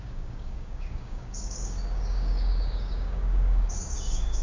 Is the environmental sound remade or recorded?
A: remade